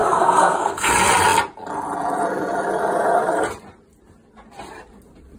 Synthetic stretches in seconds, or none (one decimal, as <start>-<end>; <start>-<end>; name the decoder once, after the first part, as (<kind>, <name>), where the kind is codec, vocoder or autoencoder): 0.0-0.9 (codec, SNAC)